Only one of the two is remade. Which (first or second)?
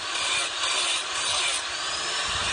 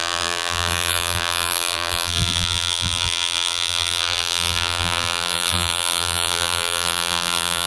second